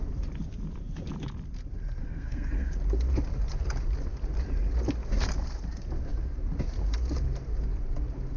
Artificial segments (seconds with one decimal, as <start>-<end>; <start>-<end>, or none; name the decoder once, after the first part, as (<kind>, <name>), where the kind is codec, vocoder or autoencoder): 2.0-2.7 (codec, SNAC)